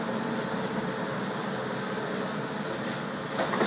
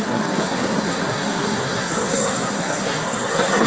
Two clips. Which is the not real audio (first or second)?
second